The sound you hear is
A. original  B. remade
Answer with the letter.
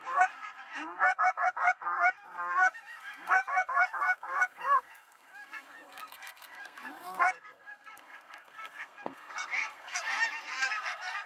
B